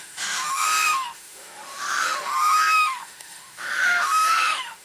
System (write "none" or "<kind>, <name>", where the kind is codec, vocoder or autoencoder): autoencoder, DAC-VAE